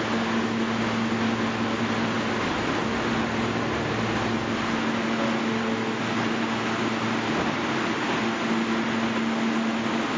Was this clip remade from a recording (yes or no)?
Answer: no